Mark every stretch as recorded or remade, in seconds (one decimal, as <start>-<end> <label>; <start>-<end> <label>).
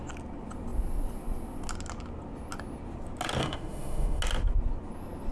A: 0.0-3.4 recorded; 3.4-4.2 remade; 4.2-5.3 recorded